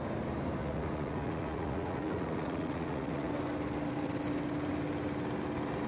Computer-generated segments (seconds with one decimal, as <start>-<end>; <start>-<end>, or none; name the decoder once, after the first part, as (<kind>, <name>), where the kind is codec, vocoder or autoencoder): 0.6-3.3 (vocoder, Vocos)